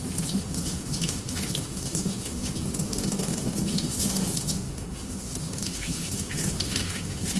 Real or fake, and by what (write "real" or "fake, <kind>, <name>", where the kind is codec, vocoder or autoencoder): fake, autoencoder, DAC-VAE